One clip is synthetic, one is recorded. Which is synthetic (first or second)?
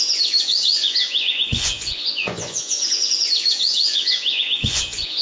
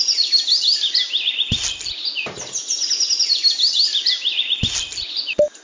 first